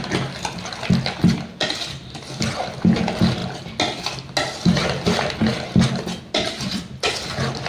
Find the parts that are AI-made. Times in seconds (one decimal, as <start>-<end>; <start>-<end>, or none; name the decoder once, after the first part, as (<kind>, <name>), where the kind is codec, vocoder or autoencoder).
none